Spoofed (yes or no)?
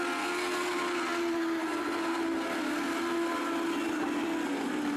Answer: no